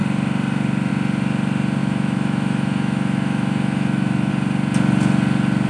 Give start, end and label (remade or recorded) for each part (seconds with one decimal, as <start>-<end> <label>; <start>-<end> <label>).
0.0-1.8 recorded; 1.8-4.3 remade; 4.3-5.7 recorded